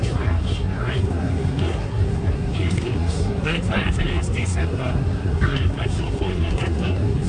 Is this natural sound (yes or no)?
no